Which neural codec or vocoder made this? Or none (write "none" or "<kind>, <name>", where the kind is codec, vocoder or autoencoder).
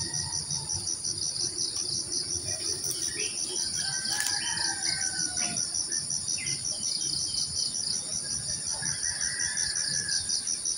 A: none